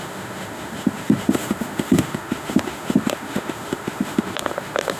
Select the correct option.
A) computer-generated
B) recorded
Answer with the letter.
A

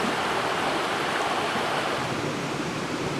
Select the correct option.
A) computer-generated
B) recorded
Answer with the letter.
B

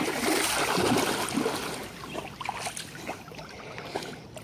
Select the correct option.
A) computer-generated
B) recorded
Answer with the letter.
B